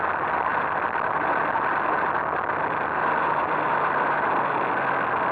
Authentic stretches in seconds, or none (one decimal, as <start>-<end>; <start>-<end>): 0.0-5.3